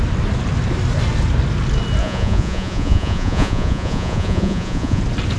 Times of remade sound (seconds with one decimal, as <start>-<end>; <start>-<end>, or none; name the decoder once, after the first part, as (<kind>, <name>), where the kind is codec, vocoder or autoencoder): 2.0-5.0 (vocoder, Vocos)

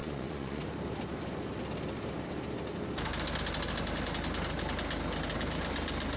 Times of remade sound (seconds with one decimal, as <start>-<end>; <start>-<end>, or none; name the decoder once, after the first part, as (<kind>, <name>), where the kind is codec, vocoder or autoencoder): 0.0-0.6 (vocoder, Vocos)

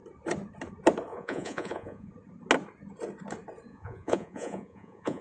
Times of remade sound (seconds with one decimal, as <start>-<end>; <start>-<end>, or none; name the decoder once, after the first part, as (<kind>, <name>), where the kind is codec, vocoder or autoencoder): 1.1-2.1 (vocoder, Vocos); 3.7-5.2

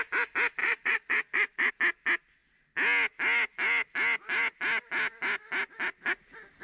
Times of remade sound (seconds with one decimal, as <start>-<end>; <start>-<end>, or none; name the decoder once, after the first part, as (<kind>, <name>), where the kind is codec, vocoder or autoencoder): 0.6-1.7 (vocoder, Vocos)

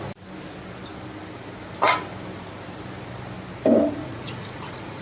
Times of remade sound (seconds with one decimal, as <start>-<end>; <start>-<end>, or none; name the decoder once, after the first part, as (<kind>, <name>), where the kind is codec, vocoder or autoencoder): 4.0-5.0 (vocoder, Vocos)

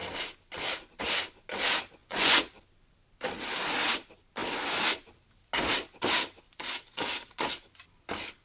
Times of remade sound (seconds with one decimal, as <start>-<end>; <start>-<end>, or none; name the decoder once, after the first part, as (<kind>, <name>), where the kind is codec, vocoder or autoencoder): 2.0-2.6 (vocoder, Vocos)